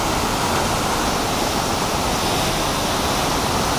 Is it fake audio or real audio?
real